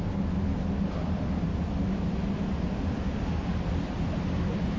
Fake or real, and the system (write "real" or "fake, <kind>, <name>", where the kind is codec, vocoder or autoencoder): real